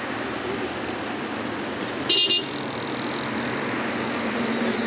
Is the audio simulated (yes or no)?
no